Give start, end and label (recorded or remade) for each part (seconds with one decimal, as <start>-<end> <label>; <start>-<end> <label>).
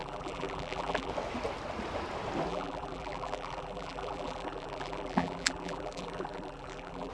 0.0-1.1 remade; 1.1-2.5 recorded; 2.5-7.1 remade